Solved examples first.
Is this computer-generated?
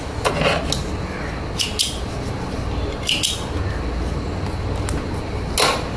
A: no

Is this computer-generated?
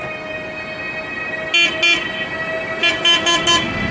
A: no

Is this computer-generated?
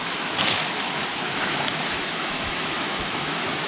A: yes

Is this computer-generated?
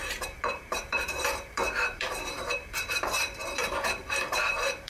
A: yes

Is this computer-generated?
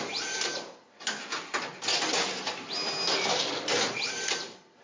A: no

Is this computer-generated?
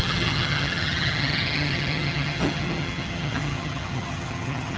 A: yes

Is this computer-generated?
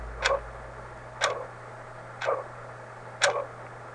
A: no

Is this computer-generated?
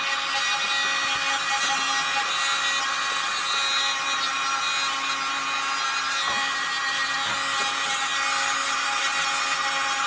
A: no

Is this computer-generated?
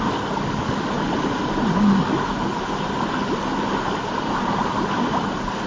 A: no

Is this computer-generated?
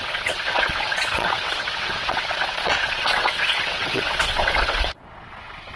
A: yes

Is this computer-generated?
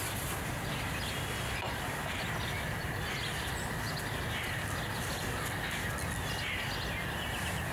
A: no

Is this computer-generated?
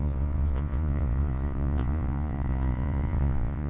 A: yes